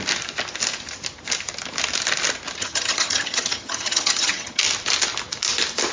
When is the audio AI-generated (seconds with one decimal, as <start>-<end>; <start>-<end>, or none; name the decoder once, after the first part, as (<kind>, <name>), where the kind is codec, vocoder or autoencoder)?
2.6-4.6 (vocoder, HiFi-GAN)